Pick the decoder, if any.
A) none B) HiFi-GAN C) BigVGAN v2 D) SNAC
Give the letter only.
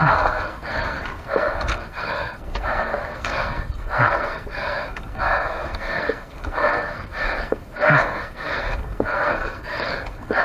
D